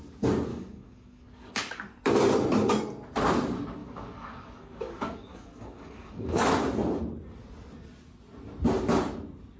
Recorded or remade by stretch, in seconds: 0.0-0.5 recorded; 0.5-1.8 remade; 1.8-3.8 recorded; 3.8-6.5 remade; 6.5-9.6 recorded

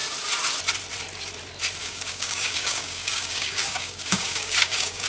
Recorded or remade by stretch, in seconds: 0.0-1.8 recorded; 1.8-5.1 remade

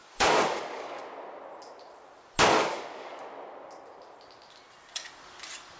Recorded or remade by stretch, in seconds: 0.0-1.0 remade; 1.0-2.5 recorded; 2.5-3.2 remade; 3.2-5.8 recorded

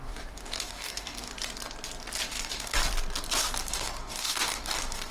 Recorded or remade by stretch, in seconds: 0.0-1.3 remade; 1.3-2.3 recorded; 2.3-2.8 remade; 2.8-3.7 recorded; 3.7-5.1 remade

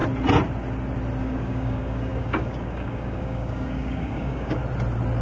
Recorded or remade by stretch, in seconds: 0.0-1.2 recorded; 1.2-4.6 remade; 4.6-5.2 recorded

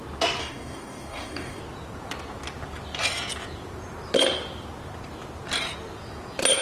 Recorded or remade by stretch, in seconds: 0.0-0.4 recorded; 0.4-1.6 remade; 1.6-6.6 recorded

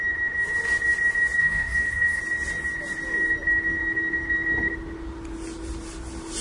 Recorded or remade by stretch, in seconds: 0.0-1.4 recorded; 1.4-2.2 remade; 2.2-6.4 recorded

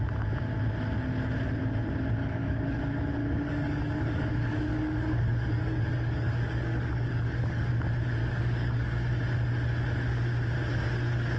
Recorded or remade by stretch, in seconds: 0.0-2.2 recorded; 2.2-2.8 remade; 2.8-3.2 recorded; 3.2-7.7 remade; 7.7-8.2 recorded; 8.2-9.1 remade; 9.1-11.4 recorded